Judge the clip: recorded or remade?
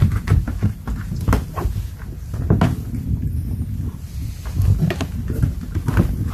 recorded